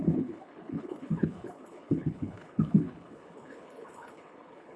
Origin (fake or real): fake